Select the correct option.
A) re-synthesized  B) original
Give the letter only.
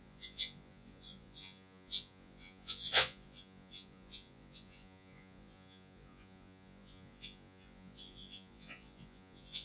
A